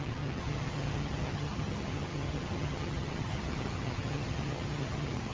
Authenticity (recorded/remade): remade